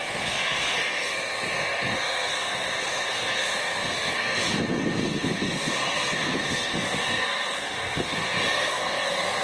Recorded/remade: remade